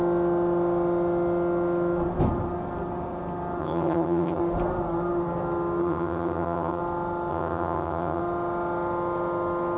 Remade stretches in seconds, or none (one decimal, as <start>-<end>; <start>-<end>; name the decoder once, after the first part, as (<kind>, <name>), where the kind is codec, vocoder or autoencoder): 3.6-4.4 (vocoder, HiFi-GAN); 5.8-6.8; 7.3-8.2

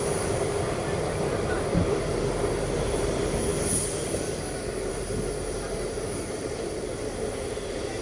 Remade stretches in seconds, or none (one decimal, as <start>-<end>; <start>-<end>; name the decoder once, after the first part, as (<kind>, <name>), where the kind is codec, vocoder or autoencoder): none

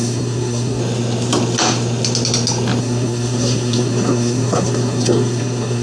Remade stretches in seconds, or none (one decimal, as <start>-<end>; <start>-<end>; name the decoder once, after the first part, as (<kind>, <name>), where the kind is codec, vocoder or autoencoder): 0.0-0.8 (codec, SNAC); 2.8-5.8

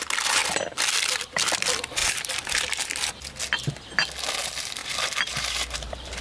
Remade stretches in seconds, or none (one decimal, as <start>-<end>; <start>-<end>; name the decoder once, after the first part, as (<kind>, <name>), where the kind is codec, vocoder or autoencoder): 2.0-3.1 (vocoder, BigVGAN v2); 4.8-6.2